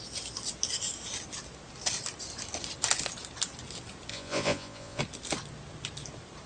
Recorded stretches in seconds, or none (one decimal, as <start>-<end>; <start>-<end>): 0.0-4.1; 5.0-6.5